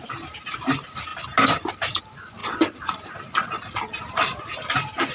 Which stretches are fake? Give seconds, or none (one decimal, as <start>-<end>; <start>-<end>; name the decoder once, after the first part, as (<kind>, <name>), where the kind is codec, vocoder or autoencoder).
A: none

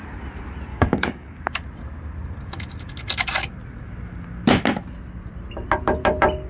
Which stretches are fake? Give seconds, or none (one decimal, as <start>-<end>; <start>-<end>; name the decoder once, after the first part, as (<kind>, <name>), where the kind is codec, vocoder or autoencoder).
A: 0.7-1.4 (codec, DAC)

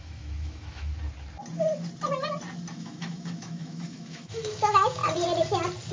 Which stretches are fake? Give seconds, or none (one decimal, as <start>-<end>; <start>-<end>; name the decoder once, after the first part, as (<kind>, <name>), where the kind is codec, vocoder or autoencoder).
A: 0.0-0.9 (autoencoder, DAC-VAE); 2.7-5.0

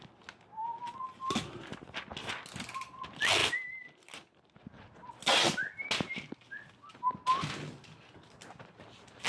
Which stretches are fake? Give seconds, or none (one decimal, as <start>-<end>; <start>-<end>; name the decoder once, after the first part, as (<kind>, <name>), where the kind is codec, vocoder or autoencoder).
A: none

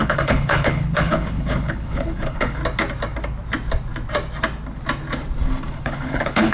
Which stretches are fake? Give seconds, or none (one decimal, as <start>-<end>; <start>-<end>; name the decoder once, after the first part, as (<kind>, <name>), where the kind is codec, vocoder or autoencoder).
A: 0.0-2.6 (codec, HILCodec); 5.7-6.5